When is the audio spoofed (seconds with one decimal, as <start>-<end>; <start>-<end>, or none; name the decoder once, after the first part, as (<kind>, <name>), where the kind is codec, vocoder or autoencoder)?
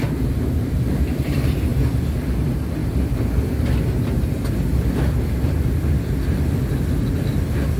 0.0-1.7 (vocoder, BigVGAN v2); 2.2-2.8